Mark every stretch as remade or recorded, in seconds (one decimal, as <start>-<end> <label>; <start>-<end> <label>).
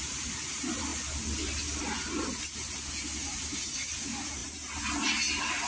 0.0-0.9 remade; 0.9-2.4 recorded; 2.4-5.7 remade